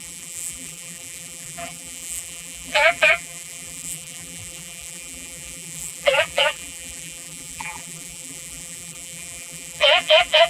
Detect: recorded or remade remade